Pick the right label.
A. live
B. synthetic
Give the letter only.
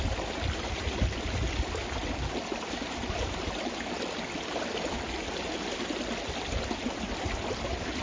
A